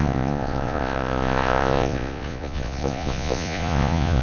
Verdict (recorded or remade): remade